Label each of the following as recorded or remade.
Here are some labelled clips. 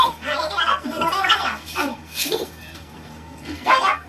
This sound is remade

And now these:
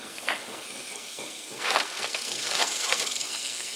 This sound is remade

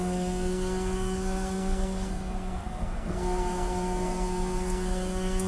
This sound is remade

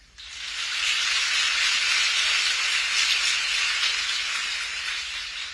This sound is recorded